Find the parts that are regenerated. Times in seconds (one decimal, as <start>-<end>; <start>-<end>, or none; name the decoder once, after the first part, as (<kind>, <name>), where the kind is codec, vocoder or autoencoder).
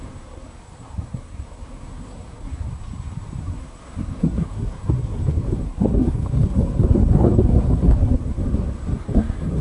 0.0-2.7 (codec, SNAC); 3.4-9.6